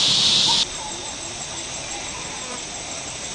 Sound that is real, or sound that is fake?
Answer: real